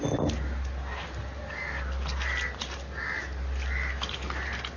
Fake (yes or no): no